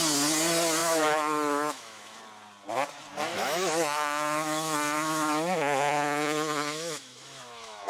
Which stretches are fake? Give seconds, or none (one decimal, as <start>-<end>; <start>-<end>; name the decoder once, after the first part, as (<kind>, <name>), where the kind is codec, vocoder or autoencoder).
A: 0.8-2.2 (autoencoder, DAC-VAE); 3.3-7.9